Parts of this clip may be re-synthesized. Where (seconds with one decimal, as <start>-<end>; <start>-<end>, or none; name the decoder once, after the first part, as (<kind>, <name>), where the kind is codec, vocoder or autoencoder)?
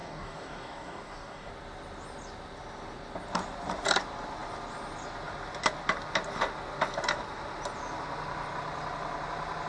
0.0-1.5 (codec, DAC)